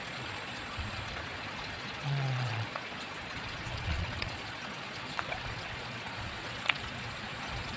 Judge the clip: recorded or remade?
remade